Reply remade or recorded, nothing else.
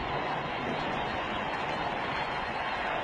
remade